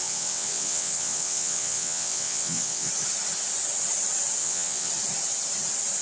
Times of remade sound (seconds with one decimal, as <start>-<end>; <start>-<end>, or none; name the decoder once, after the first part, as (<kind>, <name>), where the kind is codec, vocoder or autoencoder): 0.0-2.9 (vocoder, WaveNeXt); 4.4-4.9